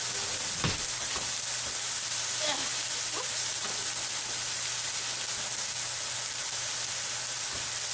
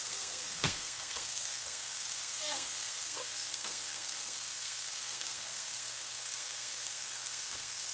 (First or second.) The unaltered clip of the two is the first